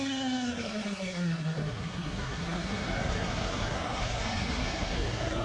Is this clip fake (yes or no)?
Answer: yes